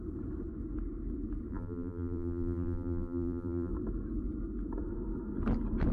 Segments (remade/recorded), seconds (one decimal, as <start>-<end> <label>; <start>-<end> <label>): 0.0-1.5 recorded; 1.5-3.7 remade; 3.7-5.9 recorded